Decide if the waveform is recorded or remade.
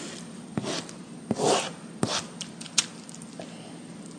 recorded